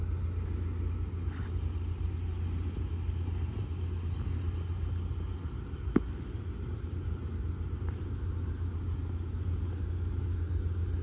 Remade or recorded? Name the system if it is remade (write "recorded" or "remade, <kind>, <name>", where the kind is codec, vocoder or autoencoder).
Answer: recorded